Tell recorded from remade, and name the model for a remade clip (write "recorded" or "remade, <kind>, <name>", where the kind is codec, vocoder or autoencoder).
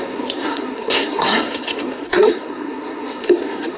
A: remade, codec, SNAC